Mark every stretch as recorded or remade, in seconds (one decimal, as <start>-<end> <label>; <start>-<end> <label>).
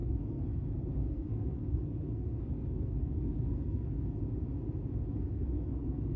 0.0-4.2 remade; 4.2-5.1 recorded; 5.1-6.2 remade